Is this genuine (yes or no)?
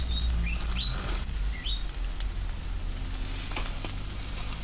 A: yes